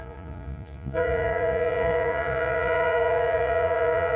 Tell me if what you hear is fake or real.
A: fake